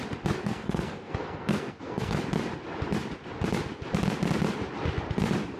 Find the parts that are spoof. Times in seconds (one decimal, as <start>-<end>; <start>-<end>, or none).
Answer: 0.4-2.2